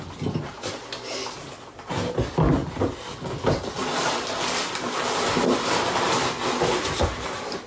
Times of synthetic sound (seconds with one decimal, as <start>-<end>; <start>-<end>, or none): none